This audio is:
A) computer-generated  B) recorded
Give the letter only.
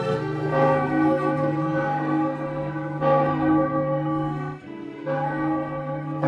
A